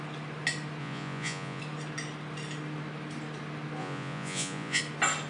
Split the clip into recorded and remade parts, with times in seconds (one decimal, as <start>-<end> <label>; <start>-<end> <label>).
0.0-0.8 recorded; 0.8-1.6 remade; 1.6-3.8 recorded; 3.8-4.8 remade; 4.8-5.3 recorded